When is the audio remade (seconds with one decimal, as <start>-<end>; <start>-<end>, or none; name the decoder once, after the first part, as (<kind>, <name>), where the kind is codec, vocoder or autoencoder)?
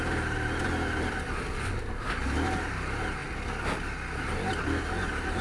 none